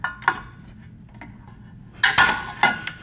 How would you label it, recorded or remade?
recorded